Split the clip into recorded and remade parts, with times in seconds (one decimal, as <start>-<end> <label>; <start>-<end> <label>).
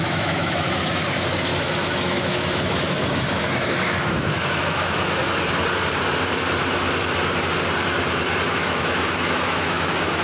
0.0-5.2 remade; 5.2-8.5 recorded; 8.5-10.2 remade